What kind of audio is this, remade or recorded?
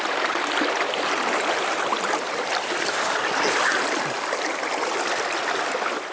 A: recorded